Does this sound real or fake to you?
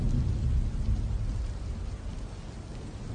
real